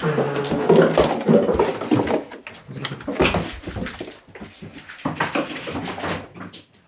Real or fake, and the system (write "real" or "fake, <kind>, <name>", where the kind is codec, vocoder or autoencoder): real